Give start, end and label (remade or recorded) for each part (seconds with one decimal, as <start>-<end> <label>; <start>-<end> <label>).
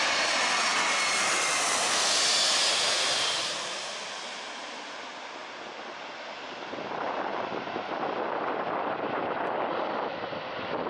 0.0-10.9 recorded